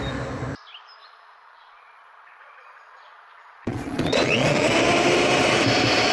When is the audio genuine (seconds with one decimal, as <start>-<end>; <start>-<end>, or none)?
0.0-1.0; 4.7-6.1